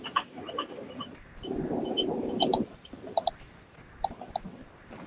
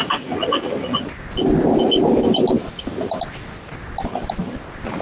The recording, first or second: second